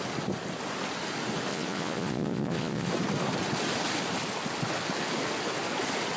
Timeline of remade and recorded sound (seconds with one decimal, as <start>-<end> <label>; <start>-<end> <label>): 0.0-1.5 recorded; 1.5-2.9 remade; 2.9-6.2 recorded